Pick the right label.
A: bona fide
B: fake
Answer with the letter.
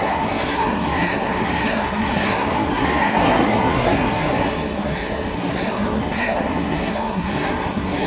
B